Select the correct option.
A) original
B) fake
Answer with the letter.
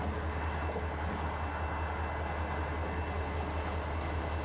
A